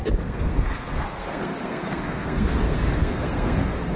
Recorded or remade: remade